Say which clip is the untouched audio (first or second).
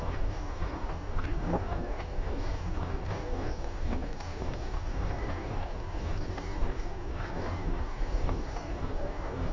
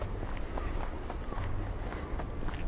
second